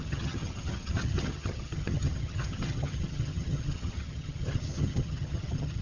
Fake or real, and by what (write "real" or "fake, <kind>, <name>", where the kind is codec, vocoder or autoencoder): fake, vocoder, HiFi-GAN